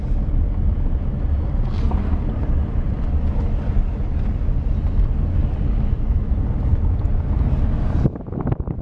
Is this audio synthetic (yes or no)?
no